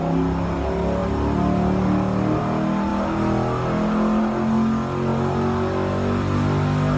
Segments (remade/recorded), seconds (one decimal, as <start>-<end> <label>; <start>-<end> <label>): 0.0-7.0 recorded